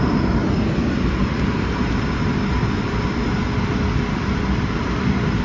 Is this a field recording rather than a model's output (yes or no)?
yes